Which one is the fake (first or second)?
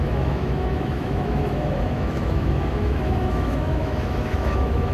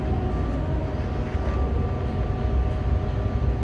first